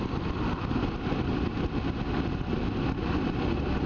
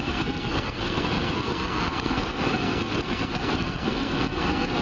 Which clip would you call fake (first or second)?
second